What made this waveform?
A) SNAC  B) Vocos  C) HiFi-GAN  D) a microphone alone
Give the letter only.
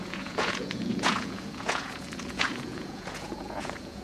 B